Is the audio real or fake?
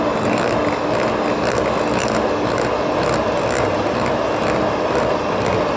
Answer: real